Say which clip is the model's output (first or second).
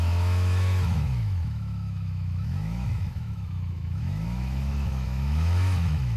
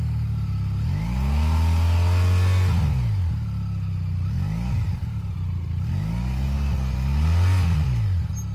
first